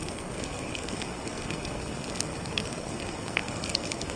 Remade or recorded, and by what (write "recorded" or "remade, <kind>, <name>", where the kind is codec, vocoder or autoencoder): remade, codec, SNAC